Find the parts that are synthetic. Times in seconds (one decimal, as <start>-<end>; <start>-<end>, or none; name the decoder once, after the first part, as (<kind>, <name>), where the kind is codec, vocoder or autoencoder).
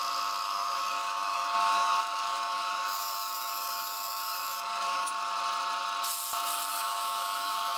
0.4-5.1 (codec, DAC); 6.7-7.8